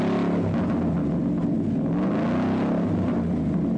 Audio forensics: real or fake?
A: real